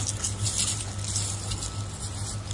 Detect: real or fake real